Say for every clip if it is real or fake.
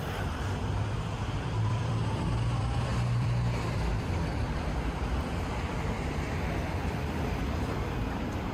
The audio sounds fake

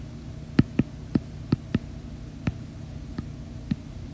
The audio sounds real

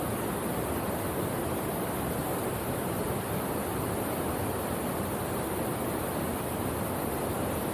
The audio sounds real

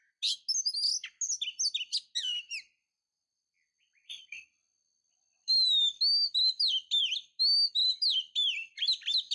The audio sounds real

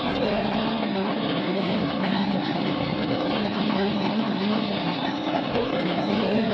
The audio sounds fake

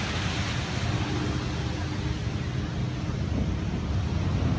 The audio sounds real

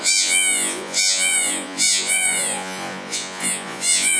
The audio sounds fake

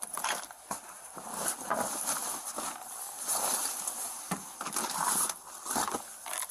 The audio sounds real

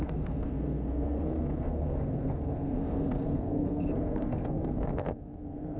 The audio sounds fake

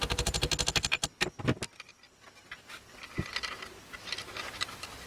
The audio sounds real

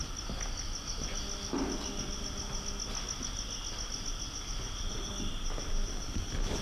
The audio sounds real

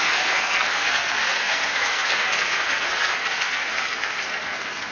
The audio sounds fake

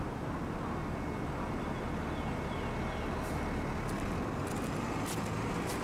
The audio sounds real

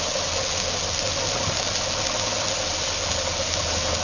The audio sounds real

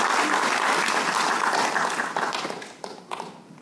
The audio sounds real